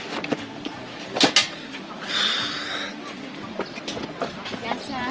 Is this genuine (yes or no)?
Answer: yes